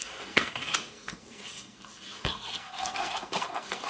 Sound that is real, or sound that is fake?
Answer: fake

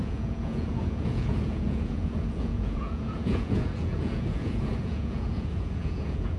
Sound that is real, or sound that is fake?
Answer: fake